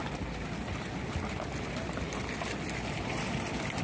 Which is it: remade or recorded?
recorded